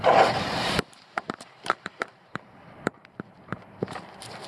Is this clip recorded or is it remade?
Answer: remade